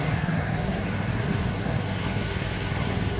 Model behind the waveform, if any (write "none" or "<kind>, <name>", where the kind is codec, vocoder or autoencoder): codec, SNAC